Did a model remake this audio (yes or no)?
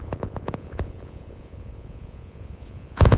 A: yes